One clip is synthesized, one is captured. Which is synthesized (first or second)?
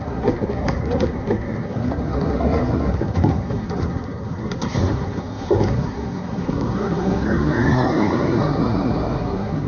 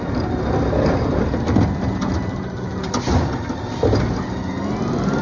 first